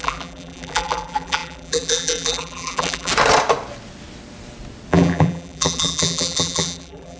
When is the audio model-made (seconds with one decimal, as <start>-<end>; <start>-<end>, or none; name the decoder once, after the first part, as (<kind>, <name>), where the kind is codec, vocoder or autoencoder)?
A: 0.0-3.1 (vocoder, BigVGAN v2); 4.9-7.2